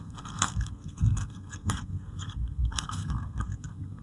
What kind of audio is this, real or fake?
fake